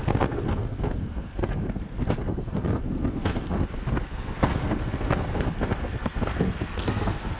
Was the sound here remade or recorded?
remade